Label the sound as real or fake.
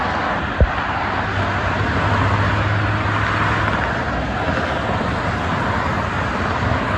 real